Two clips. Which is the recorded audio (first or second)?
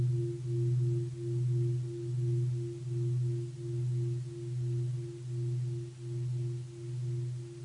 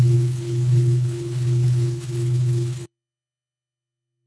first